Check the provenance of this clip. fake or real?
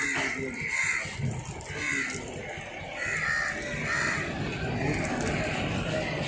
real